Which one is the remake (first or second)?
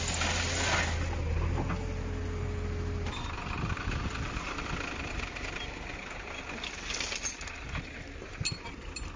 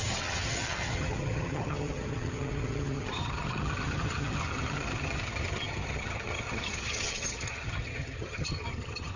second